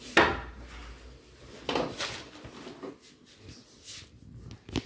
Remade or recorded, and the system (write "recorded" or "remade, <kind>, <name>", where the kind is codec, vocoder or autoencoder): recorded